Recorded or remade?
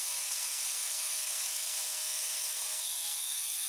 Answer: remade